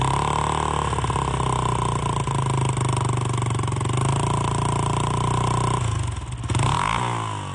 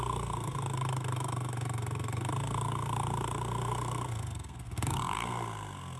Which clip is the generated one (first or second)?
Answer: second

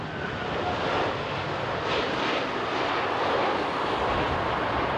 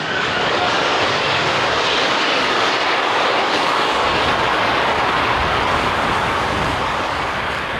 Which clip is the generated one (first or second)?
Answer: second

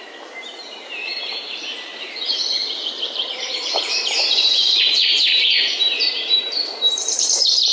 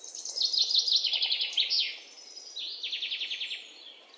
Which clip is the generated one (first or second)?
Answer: first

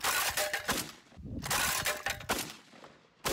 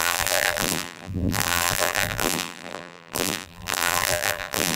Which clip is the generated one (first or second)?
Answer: second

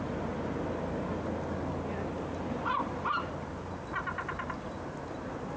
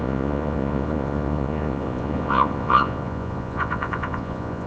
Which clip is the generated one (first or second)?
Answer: second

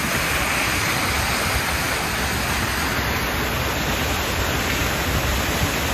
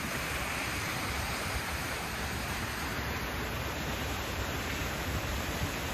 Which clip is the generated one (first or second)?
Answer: second